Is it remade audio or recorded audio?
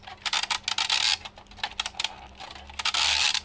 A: recorded